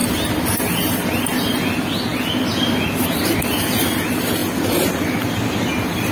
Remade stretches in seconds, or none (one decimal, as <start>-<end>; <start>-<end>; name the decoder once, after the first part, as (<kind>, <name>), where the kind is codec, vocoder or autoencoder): none